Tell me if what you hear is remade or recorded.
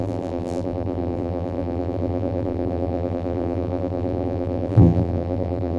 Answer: remade